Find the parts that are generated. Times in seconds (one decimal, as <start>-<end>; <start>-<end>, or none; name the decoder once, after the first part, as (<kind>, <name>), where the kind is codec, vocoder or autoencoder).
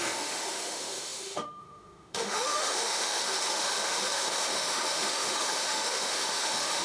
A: 0.0-6.8 (autoencoder, DAC-VAE)